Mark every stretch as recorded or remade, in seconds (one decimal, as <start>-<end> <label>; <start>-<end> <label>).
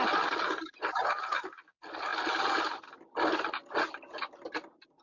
0.0-5.0 recorded